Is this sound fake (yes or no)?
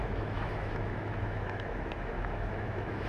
yes